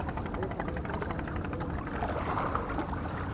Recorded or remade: recorded